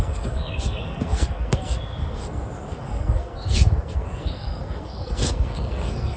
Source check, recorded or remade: remade